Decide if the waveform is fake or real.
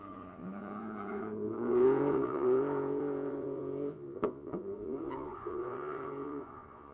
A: fake